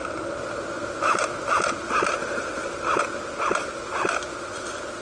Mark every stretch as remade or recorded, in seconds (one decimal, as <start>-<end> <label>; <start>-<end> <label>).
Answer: 0.0-5.0 recorded

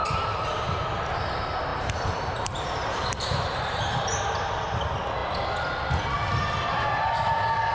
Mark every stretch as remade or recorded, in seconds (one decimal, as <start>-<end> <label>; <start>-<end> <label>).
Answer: 0.0-1.0 remade; 1.0-1.7 recorded; 1.7-4.6 remade; 4.6-7.7 recorded